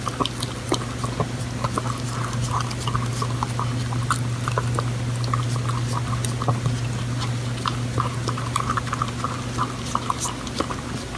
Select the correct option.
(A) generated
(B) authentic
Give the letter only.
B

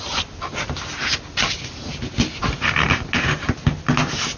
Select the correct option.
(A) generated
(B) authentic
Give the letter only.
B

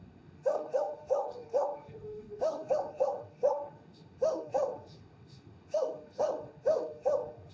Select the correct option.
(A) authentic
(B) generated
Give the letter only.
B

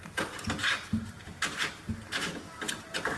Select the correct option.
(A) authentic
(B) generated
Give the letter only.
B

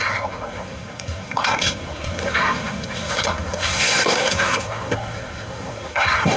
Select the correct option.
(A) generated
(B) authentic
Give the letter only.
A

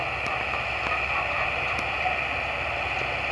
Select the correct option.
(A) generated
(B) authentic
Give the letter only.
B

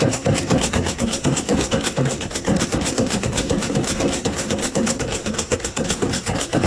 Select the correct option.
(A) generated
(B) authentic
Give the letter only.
A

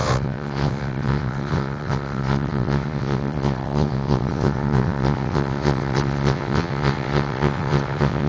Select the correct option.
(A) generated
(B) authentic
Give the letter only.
A